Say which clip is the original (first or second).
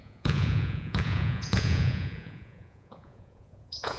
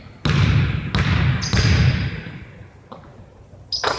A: second